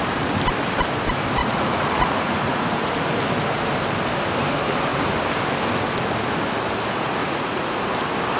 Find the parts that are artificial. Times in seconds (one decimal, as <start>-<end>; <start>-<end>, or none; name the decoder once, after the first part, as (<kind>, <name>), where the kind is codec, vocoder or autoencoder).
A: 1.4-2.9 (vocoder, Vocos); 7.2-7.8